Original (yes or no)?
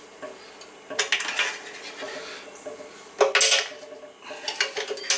yes